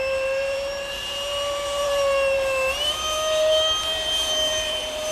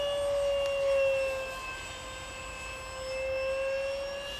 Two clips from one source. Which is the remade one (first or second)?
first